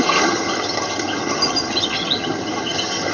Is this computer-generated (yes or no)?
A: yes